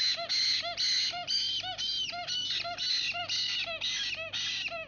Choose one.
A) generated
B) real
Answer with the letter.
B